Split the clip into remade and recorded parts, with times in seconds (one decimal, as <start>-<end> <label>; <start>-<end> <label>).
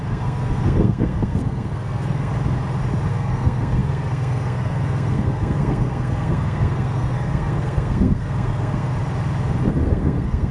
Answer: 0.0-2.3 remade; 2.3-3.1 recorded; 3.1-8.9 remade; 8.9-9.7 recorded; 9.7-10.5 remade